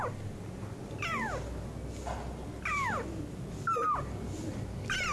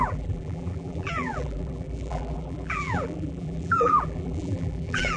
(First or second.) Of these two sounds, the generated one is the second